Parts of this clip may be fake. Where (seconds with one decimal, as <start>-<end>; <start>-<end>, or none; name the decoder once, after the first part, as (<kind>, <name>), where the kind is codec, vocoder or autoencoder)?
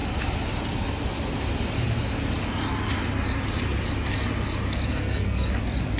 4.9-5.5 (codec, SNAC)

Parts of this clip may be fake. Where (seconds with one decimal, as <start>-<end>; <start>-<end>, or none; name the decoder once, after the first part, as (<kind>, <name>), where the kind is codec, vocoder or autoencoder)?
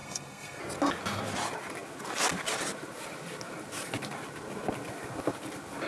0.0-0.6 (codec, SNAC)